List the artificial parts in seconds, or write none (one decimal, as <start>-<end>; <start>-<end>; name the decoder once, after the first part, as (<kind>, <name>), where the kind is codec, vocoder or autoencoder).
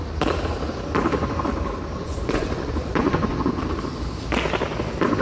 2.0-3.6 (vocoder, Vocos)